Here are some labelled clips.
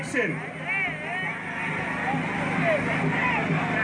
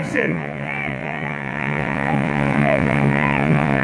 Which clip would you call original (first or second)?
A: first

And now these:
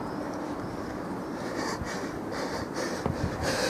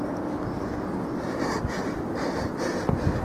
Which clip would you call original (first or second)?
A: second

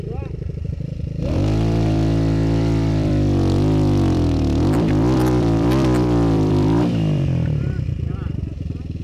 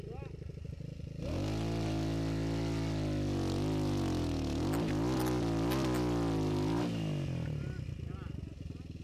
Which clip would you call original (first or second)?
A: second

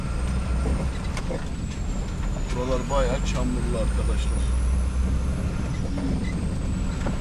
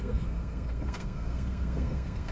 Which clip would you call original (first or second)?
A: first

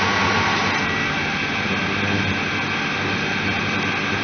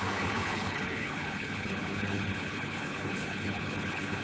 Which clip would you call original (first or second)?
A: first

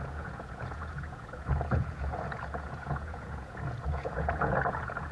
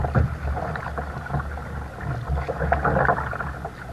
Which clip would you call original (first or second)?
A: second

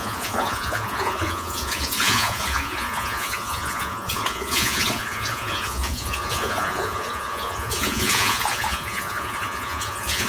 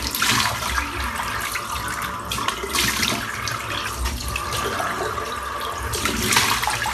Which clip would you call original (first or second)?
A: second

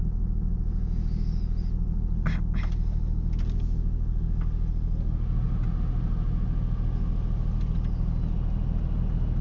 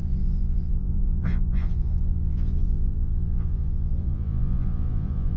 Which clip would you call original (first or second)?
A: first